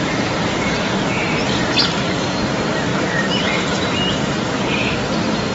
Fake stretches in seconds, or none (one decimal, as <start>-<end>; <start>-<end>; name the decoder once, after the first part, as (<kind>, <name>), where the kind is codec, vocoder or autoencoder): 0.0-5.5 (vocoder, BigVGAN v2)